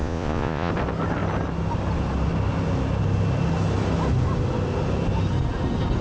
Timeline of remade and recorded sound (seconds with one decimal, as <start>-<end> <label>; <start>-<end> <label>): 0.0-0.7 remade; 0.7-6.0 recorded